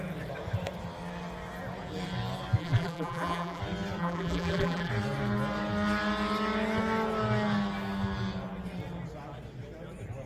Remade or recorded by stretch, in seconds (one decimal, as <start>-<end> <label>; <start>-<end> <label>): 0.0-2.6 recorded; 2.6-3.6 remade; 3.6-4.0 recorded; 4.0-4.9 remade; 4.9-10.3 recorded